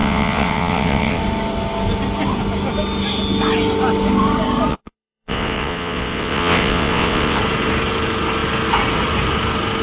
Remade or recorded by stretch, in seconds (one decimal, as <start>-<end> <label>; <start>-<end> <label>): 0.0-1.2 remade; 1.2-4.7 recorded; 4.7-7.4 remade; 7.4-9.8 recorded